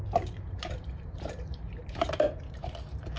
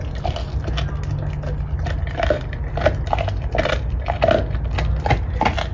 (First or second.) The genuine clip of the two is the second